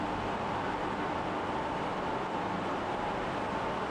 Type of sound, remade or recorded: recorded